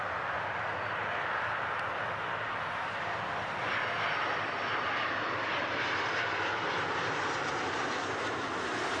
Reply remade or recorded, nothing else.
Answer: recorded